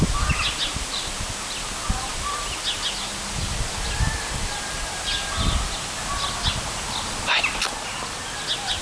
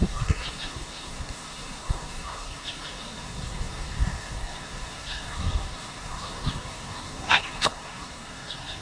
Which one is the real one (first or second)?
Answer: first